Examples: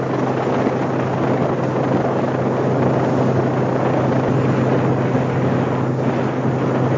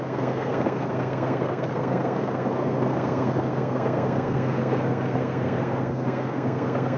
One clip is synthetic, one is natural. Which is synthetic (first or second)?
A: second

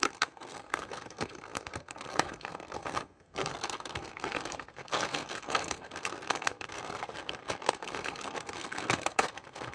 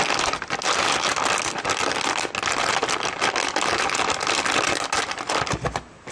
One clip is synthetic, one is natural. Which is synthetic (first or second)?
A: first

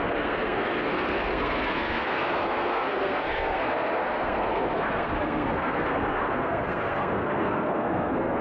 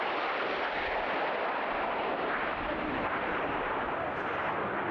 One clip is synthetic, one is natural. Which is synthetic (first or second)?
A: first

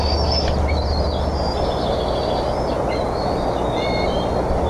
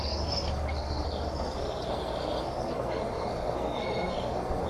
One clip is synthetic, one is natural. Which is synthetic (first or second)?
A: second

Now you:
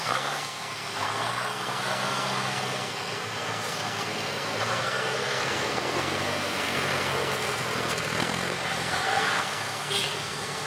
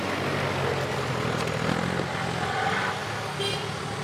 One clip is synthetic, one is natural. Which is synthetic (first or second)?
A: first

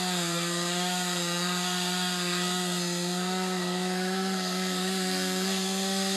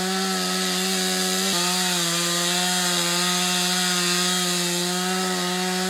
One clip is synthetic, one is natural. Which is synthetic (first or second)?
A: first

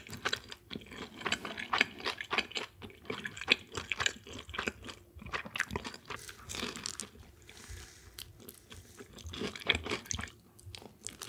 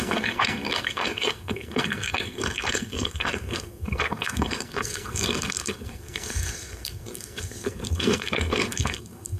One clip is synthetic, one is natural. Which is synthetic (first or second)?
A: second